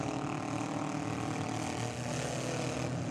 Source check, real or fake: real